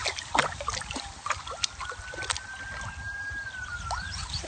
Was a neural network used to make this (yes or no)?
no